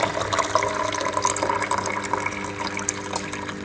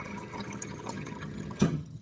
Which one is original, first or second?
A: first